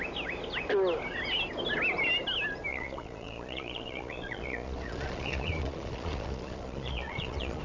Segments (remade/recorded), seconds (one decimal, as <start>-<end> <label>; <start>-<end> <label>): 0.0-2.7 recorded; 2.7-7.6 remade